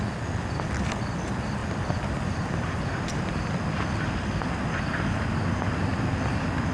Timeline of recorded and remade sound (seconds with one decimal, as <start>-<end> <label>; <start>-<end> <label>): 0.0-6.7 recorded